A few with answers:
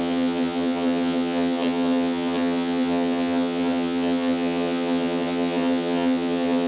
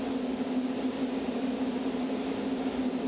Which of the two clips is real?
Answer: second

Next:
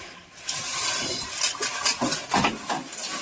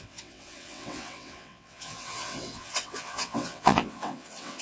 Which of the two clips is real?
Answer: first